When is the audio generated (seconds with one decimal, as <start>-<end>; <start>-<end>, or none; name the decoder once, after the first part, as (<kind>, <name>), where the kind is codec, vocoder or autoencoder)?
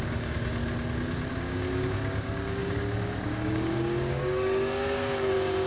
0.0-0.6 (codec, DAC); 1.3-5.7